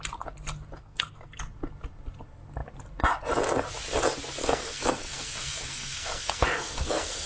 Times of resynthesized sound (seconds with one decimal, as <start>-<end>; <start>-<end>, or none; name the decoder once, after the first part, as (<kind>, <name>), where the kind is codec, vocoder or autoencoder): 0.8-1.4 (codec, SNAC); 4.4-7.3